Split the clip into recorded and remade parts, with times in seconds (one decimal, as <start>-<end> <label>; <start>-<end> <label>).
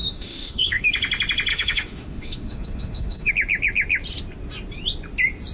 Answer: 0.0-0.9 remade; 0.9-1.5 recorded; 1.5-3.3 remade; 3.3-5.5 recorded